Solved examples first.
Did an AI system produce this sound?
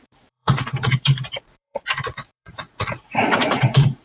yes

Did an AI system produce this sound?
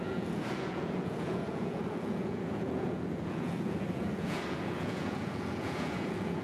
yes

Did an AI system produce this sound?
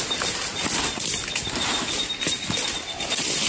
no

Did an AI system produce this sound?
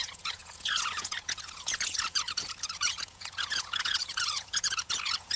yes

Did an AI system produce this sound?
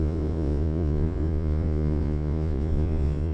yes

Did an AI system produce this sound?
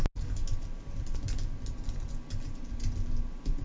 no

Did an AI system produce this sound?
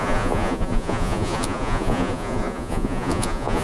yes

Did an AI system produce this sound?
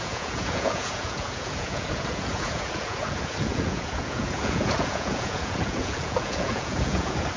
yes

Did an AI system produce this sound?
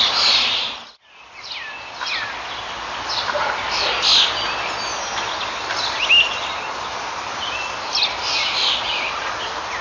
no